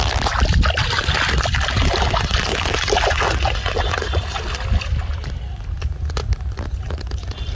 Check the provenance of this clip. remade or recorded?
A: recorded